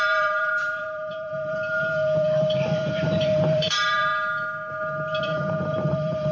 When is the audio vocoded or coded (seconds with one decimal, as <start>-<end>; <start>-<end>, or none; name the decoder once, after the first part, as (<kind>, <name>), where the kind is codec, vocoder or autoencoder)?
0.0-4.1 (vocoder, BigVGAN v2); 5.2-6.3